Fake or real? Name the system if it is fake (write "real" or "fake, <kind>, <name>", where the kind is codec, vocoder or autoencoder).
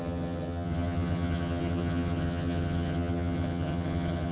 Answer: fake, vocoder, HiFi-GAN